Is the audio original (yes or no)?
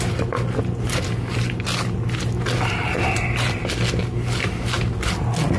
yes